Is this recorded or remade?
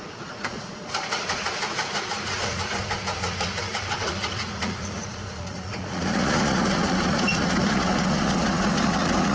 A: remade